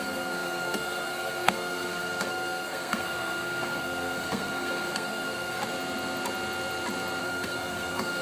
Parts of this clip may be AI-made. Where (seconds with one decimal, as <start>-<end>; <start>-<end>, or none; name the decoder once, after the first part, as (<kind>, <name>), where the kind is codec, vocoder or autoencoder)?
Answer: 0.0-5.6 (codec, SNAC); 7.2-8.2